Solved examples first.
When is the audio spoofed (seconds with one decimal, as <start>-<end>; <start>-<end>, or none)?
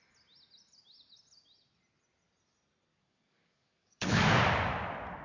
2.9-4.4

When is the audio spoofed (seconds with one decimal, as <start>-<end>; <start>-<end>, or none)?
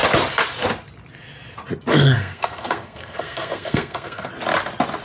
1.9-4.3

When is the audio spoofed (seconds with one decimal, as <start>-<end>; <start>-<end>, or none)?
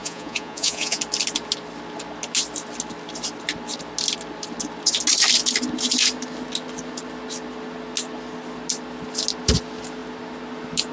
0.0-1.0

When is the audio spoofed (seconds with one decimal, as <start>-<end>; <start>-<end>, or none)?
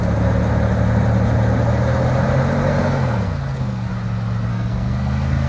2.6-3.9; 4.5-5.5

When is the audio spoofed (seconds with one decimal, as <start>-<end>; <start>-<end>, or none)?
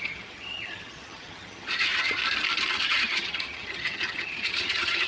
0.0-2.2; 2.7-5.1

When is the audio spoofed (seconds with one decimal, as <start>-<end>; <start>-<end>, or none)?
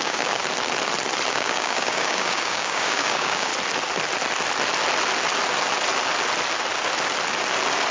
0.0-0.4; 1.3-3.5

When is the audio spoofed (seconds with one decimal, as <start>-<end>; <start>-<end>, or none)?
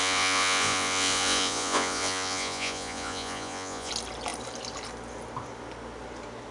0.0-3.9